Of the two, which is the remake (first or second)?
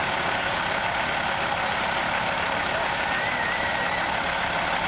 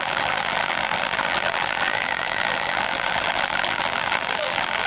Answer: second